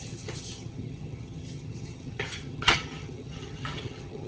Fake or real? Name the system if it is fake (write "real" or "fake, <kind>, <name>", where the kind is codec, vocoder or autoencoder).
fake, vocoder, HiFi-GAN